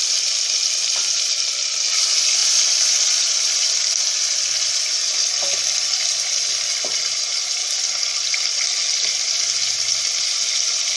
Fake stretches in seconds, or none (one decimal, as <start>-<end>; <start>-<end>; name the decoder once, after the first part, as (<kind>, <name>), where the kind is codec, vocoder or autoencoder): none